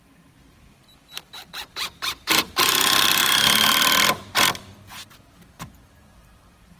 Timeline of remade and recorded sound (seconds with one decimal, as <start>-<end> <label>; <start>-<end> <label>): 0.0-6.8 recorded